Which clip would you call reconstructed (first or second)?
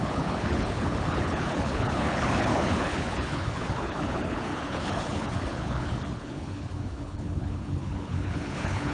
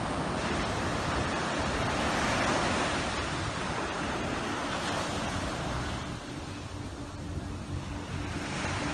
first